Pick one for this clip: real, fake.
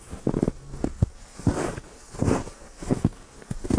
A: fake